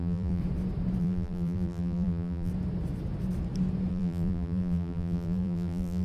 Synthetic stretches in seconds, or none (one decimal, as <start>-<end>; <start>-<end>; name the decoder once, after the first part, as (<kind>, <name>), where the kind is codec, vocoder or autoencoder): 0.0-0.4 (vocoder, BigVGAN v2); 1.0-2.5; 3.9-6.0